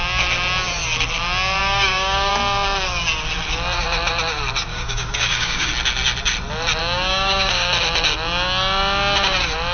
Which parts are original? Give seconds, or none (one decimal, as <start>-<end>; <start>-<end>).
0.0-1.6; 2.3-4.7; 5.7-6.8; 7.7-9.7